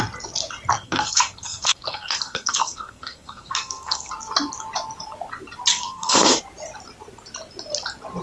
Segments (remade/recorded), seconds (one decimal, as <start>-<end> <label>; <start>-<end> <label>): 0.0-0.7 recorded; 0.7-4.1 remade; 4.1-5.7 recorded; 5.7-6.4 remade; 6.4-8.2 recorded